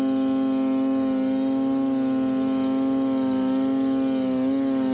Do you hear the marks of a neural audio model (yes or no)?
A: no